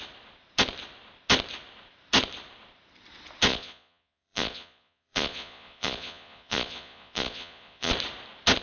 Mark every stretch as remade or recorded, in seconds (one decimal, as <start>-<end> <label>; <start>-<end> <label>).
0.0-3.5 recorded; 3.5-7.9 remade; 7.9-8.6 recorded